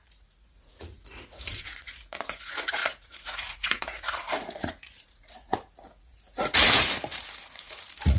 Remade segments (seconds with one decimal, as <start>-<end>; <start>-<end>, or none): 0.0-8.2